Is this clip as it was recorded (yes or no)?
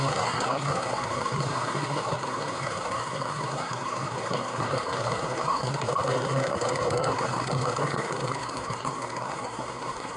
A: no